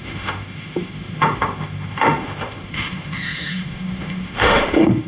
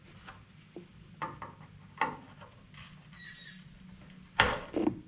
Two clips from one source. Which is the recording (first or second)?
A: second